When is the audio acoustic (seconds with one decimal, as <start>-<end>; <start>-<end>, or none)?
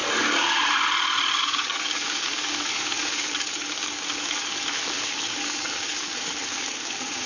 0.0-1.4